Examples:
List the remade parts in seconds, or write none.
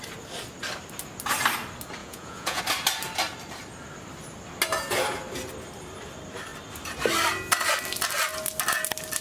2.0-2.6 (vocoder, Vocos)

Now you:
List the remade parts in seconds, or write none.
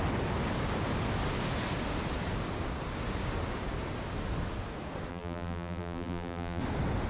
5.1-6.6 (vocoder, BigVGAN v2)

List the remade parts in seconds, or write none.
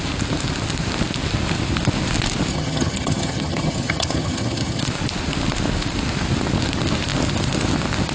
2.5-4.8 (vocoder, HiFi-GAN)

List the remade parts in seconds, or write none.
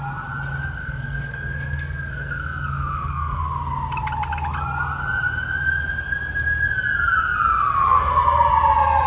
0.8-3.4 (codec, SNAC)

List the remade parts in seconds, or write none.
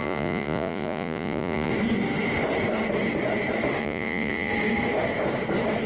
0.0-1.7 (vocoder, Vocos); 3.8-4.5